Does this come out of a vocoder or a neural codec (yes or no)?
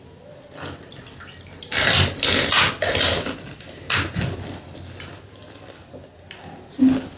no